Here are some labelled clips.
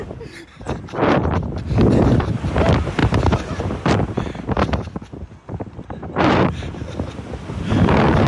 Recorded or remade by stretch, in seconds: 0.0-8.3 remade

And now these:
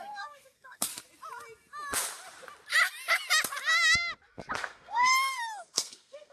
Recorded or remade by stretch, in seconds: 0.0-0.9 remade; 0.9-4.7 recorded; 4.7-6.3 remade

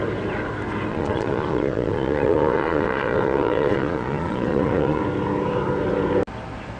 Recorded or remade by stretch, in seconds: 0.0-0.9 recorded; 0.9-5.0 remade; 5.0-6.8 recorded

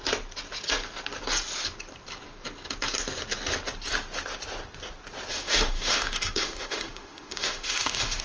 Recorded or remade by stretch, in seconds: 0.0-5.3 recorded; 5.3-8.2 remade

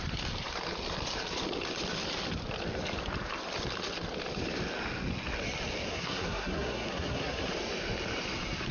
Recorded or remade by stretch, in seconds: 0.0-5.9 recorded; 5.9-7.5 remade; 7.5-8.7 recorded